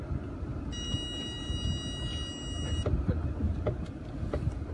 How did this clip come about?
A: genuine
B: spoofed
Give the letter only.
A